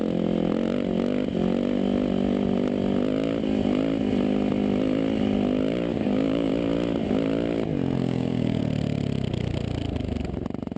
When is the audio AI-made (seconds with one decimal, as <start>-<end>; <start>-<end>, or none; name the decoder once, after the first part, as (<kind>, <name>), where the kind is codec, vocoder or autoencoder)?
5.9-6.5 (codec, DAC); 8.0-8.6